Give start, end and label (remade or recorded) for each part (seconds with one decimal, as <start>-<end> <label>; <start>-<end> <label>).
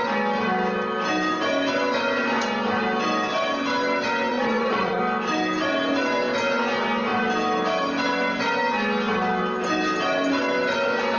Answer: 0.0-4.3 recorded; 4.3-5.0 remade; 5.0-11.2 recorded